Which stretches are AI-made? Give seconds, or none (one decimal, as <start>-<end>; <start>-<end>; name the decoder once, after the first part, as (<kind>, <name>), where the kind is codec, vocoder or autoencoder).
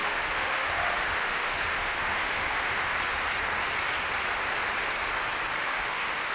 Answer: 0.0-2.9 (autoencoder, DAC-VAE); 5.6-6.3